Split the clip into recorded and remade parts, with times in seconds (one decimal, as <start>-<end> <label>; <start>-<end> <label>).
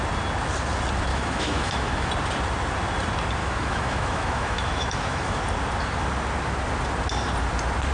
0.0-1.1 recorded; 1.1-2.1 remade; 2.1-3.4 recorded; 3.4-5.4 remade; 5.4-7.9 recorded